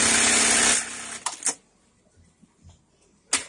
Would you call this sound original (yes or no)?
yes